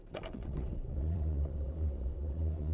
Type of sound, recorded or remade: remade